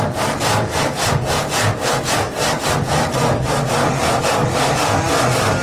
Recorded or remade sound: recorded